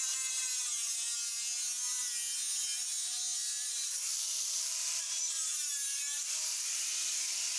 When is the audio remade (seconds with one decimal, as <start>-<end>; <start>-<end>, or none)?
3.8-5.0